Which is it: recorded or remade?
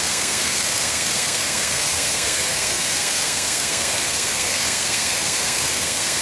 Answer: remade